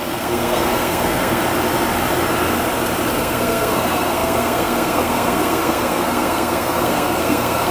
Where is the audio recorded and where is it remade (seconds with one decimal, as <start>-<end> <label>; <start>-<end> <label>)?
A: 0.0-1.4 remade; 1.4-3.1 recorded; 3.1-7.7 remade